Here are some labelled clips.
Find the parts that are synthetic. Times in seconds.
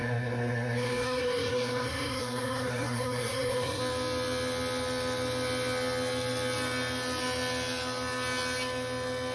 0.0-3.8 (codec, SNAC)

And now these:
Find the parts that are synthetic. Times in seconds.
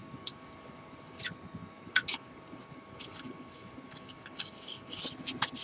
0.0-1.2 (codec, DAC); 1.6-5.0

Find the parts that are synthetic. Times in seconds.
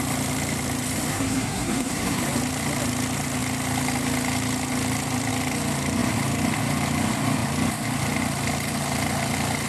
1.1-2.2 (codec, SNAC)